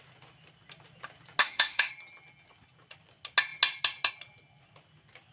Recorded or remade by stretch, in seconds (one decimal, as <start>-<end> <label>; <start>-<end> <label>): 0.0-1.4 recorded; 1.4-1.9 remade; 1.9-5.3 recorded